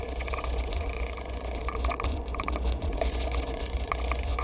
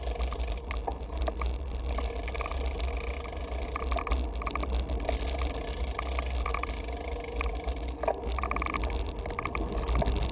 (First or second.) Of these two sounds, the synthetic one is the first